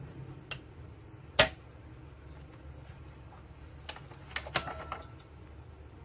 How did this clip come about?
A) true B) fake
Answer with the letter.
A